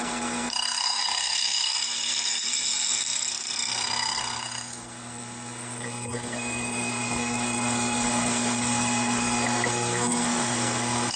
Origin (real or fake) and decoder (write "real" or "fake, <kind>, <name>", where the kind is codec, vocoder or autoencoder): fake, codec, SNAC